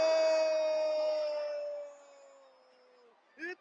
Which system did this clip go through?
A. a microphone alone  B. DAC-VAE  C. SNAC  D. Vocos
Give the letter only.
A